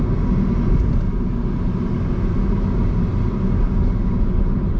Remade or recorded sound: recorded